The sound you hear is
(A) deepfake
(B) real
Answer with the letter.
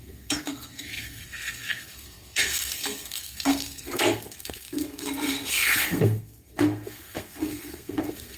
A